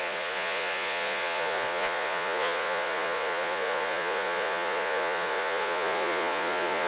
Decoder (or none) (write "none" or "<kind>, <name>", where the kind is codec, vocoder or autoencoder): vocoder, Vocos